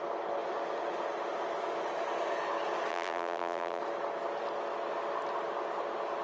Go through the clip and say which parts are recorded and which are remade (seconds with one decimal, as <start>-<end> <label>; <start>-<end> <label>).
0.0-2.9 recorded; 2.9-3.8 remade; 3.8-6.2 recorded